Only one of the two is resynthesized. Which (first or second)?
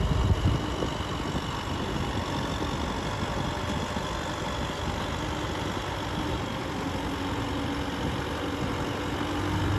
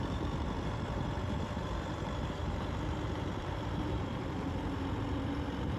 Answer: second